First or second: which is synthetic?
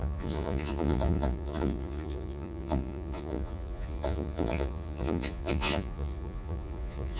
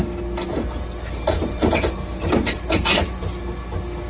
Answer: first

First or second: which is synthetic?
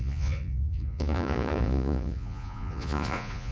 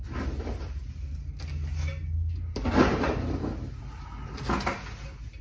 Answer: first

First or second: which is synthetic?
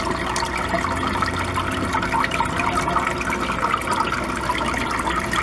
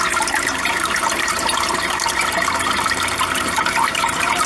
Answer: second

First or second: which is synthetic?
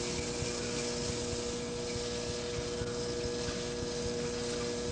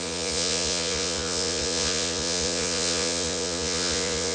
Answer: second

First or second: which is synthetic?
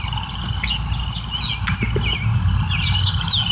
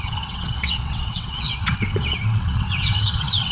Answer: second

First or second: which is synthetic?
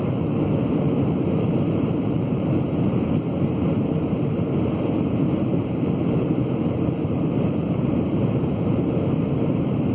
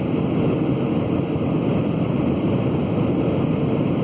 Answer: first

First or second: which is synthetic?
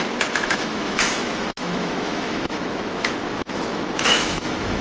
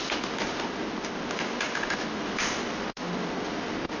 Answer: first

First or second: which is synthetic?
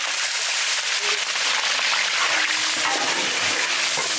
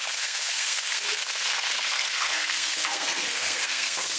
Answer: second